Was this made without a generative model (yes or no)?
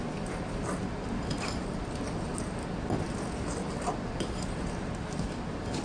yes